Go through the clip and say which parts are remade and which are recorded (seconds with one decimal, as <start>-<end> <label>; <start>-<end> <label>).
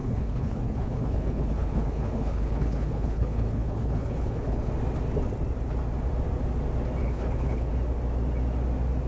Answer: 0.0-4.7 remade; 4.7-7.0 recorded; 7.0-7.7 remade; 7.7-9.1 recorded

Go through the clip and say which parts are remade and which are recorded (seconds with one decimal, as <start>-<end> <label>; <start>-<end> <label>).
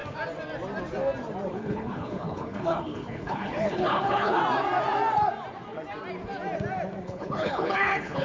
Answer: 0.0-1.5 recorded; 1.5-4.4 remade; 4.4-7.0 recorded; 7.0-8.2 remade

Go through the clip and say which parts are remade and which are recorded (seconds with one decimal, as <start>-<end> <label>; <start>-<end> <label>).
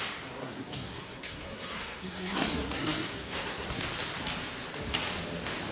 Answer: 0.0-0.4 recorded; 0.4-3.8 remade; 3.8-5.7 recorded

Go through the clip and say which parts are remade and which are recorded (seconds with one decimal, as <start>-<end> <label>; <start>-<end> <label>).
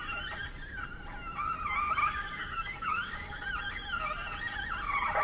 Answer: 0.0-2.0 recorded; 2.0-3.4 remade; 3.4-5.2 recorded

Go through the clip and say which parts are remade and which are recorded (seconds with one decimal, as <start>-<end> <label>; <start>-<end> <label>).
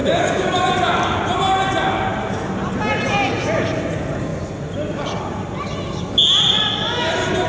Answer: 0.0-0.6 remade; 0.6-7.5 recorded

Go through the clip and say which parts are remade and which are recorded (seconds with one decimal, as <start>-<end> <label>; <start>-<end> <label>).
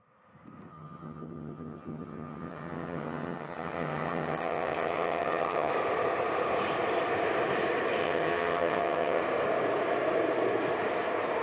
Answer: 0.0-0.7 recorded; 0.7-5.7 remade; 5.7-8.0 recorded; 8.0-9.2 remade; 9.2-11.4 recorded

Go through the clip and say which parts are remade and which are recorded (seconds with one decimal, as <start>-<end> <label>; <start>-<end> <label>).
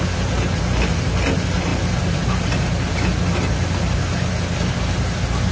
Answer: 0.0-5.5 recorded